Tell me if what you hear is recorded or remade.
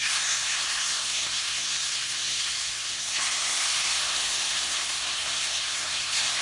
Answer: remade